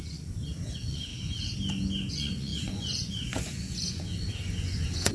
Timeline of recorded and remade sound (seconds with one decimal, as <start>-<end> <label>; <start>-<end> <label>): 0.0-1.1 remade; 1.1-2.1 recorded; 2.1-5.1 remade